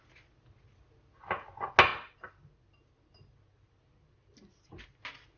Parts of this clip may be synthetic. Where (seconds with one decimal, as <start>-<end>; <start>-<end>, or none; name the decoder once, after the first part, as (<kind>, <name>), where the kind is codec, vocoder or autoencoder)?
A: none

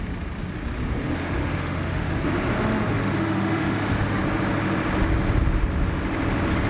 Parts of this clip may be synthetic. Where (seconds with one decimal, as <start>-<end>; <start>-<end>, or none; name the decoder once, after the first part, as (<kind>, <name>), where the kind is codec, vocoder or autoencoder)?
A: 1.4-2.1 (autoencoder, DAC-VAE); 3.0-4.2

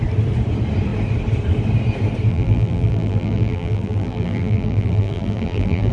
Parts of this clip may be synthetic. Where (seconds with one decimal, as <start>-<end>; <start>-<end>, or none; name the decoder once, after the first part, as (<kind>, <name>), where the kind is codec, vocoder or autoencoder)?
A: 2.3-5.9 (vocoder, BigVGAN v2)

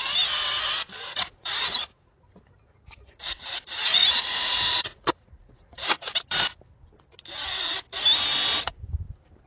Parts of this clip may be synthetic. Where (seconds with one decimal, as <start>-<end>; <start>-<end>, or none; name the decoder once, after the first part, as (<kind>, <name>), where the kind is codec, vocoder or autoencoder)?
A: 1.0-5.9 (vocoder, Vocos)

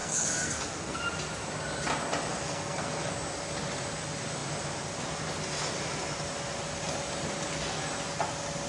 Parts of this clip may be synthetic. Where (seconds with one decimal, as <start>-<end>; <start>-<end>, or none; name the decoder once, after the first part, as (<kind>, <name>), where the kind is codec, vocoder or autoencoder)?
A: 0.0-1.0 (codec, SNAC); 2.3-3.1